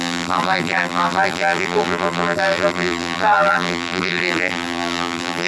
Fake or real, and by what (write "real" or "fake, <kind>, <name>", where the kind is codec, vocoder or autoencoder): fake, vocoder, BigVGAN v2